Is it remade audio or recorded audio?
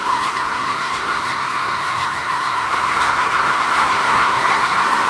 remade